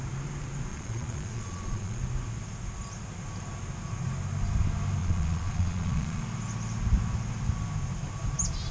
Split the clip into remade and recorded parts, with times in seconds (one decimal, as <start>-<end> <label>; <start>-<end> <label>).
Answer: 0.0-0.7 recorded; 0.7-2.0 remade; 2.0-5.0 recorded; 5.0-6.2 remade; 6.2-8.7 recorded